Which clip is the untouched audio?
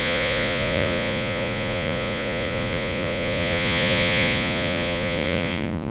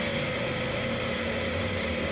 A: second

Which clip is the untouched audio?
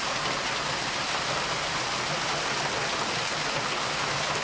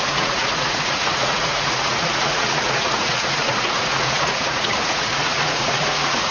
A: first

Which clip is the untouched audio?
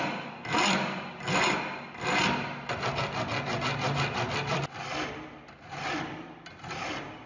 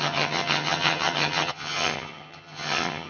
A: first